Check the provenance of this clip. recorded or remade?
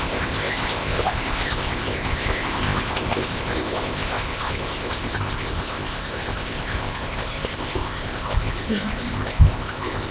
remade